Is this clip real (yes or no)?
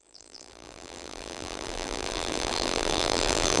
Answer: no